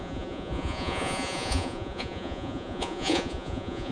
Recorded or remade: remade